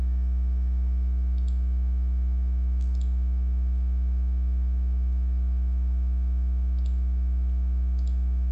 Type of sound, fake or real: real